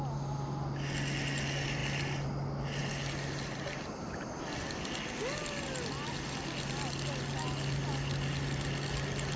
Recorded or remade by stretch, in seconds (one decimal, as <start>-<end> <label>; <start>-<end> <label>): 0.0-9.4 recorded